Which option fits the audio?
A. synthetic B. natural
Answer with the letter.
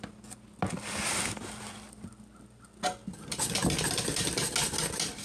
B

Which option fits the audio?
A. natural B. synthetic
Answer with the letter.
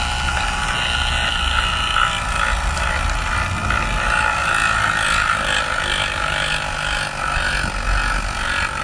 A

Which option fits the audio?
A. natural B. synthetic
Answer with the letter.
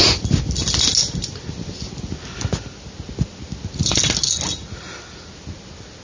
A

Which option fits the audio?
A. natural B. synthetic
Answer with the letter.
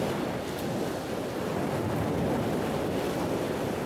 A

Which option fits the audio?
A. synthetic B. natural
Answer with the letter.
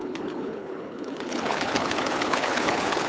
A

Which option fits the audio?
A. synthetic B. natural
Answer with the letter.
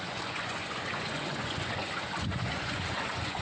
A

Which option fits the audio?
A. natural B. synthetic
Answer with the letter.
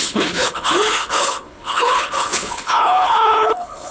B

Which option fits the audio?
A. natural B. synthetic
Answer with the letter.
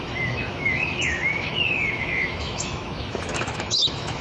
B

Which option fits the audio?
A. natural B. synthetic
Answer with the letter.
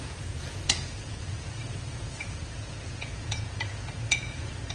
B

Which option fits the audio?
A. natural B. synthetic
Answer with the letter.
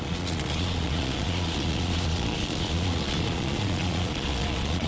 B